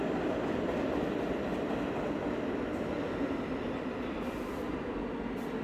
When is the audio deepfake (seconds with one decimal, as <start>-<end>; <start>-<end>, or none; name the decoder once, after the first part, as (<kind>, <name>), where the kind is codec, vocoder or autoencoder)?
none